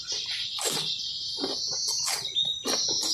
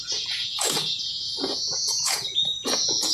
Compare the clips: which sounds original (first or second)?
first